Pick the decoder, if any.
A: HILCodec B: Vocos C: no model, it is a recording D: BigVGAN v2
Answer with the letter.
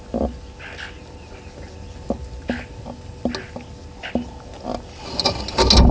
C